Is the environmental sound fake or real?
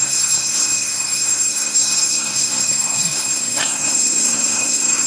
fake